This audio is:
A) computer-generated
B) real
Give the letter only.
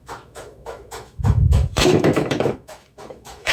A